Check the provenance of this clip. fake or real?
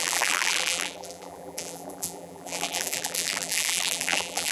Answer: fake